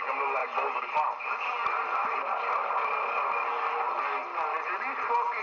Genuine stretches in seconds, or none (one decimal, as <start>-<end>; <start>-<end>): 0.0-5.4